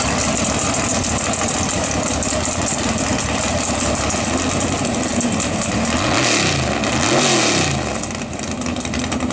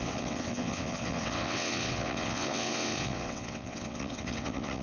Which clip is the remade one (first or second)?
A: second